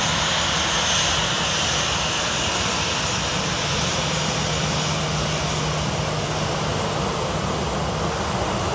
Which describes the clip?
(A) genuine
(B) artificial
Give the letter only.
A